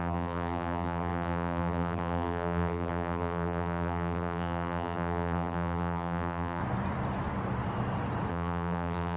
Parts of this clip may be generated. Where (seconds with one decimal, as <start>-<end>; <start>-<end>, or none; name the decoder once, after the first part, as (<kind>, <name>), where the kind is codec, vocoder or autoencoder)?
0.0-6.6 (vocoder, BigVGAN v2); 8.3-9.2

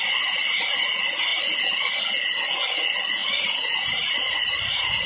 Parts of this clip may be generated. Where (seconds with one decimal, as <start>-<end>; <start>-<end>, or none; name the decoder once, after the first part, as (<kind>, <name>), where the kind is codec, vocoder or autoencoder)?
3.2-5.1 (vocoder, BigVGAN v2)

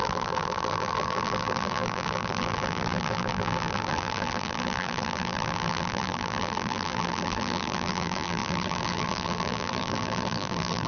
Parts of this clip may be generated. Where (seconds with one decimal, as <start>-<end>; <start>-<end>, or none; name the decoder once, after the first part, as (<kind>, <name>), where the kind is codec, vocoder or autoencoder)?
0.0-10.9 (vocoder, BigVGAN v2)

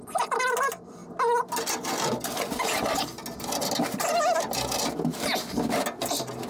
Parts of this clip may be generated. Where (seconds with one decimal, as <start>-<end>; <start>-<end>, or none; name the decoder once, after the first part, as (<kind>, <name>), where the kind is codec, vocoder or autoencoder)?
none

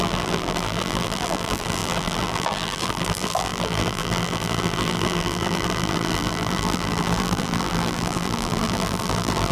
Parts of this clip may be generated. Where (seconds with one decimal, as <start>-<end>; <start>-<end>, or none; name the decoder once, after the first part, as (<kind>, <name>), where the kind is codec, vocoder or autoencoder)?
0.0-9.5 (vocoder, BigVGAN v2)

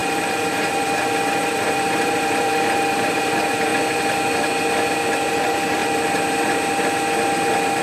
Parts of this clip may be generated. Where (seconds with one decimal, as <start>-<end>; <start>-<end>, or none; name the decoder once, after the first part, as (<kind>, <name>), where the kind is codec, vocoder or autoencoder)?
0.0-3.7 (vocoder, BigVGAN v2); 5.3-5.8

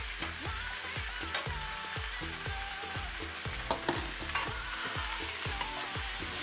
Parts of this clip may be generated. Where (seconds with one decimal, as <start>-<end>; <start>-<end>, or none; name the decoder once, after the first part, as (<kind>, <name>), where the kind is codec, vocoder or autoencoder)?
4.4-4.9 (vocoder, BigVGAN v2)

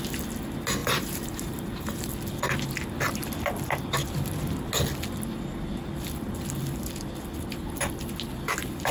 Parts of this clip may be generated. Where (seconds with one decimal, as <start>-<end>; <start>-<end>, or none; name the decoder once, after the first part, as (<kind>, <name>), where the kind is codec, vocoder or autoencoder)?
0.8-2.1 (vocoder, BigVGAN v2)